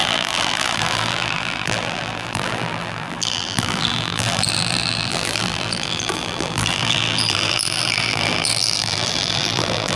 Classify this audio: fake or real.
fake